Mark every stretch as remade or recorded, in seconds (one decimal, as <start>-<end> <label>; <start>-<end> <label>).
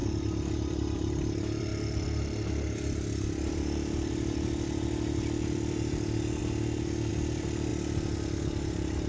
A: 0.0-0.7 recorded; 0.7-6.4 remade; 6.4-7.1 recorded; 7.1-7.7 remade; 7.7-9.1 recorded